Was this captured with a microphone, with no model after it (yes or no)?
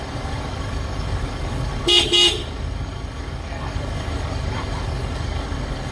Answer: no